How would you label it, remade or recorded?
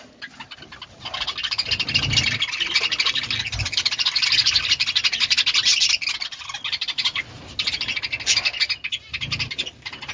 recorded